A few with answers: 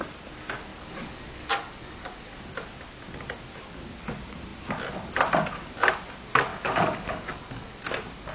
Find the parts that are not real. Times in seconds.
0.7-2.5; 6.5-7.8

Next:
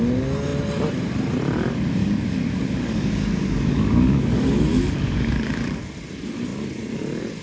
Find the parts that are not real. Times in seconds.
2.0-5.8

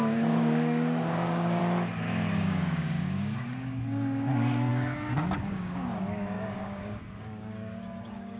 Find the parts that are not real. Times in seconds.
0.0-1.6; 2.3-8.4

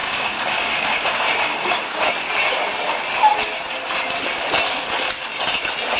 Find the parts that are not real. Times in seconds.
0.0-2.1